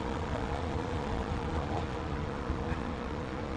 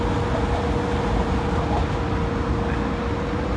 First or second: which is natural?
second